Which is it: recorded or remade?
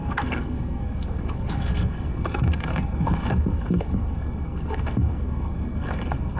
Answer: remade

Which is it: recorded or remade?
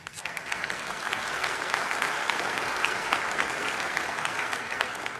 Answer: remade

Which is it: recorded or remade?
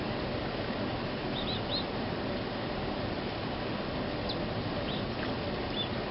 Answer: recorded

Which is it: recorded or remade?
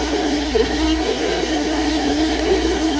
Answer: remade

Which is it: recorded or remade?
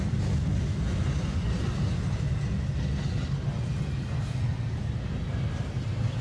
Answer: recorded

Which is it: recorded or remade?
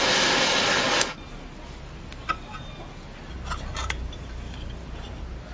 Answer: recorded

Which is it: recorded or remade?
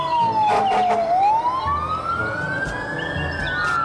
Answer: recorded